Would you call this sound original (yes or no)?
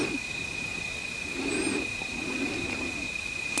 yes